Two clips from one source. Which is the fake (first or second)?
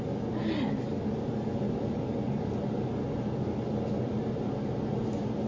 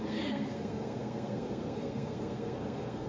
second